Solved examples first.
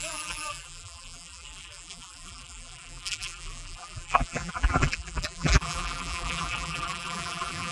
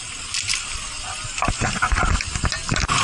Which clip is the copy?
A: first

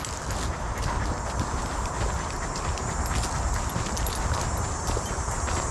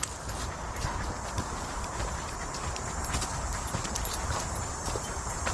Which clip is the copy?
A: second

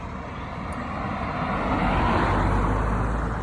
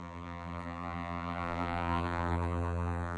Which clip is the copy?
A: second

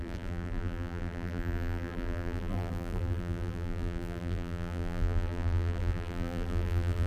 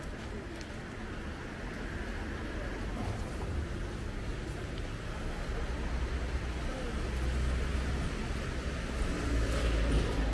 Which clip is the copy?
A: first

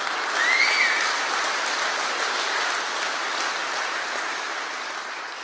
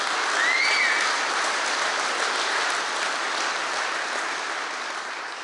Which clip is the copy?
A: first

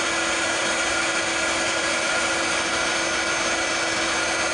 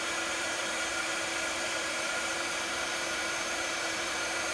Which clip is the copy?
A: second